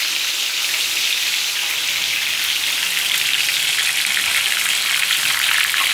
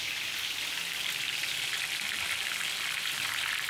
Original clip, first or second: first